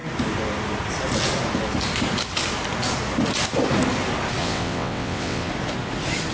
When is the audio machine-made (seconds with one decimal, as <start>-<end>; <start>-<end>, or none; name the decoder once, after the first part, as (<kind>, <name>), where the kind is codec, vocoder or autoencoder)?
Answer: 4.4-5.5 (vocoder, WaveNeXt)